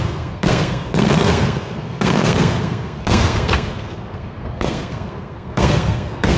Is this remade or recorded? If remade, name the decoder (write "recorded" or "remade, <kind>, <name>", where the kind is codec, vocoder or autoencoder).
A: remade, codec, SNAC